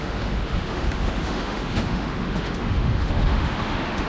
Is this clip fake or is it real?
fake